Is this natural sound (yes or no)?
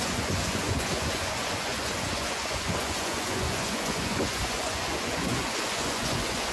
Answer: no